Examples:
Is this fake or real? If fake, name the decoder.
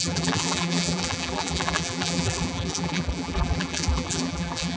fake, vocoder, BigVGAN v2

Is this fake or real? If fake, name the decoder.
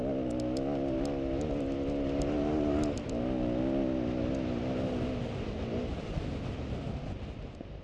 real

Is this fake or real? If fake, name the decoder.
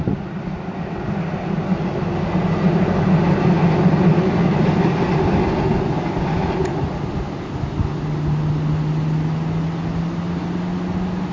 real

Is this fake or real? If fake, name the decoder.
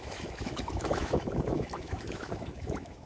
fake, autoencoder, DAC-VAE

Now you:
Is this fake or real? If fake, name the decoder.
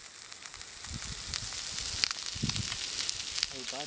real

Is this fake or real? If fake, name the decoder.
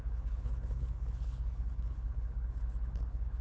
fake, codec, HILCodec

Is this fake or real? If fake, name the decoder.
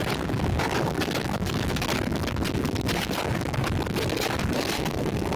fake, codec, DAC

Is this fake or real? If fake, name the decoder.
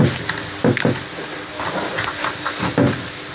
real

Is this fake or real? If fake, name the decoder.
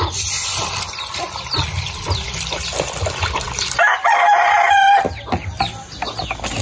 real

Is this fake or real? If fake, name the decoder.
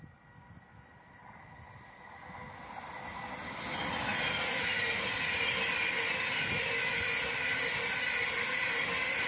real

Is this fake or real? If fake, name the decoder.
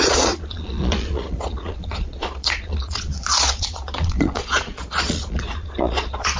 fake, vocoder, Vocos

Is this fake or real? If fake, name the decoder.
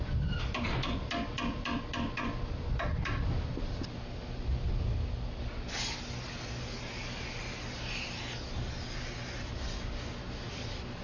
real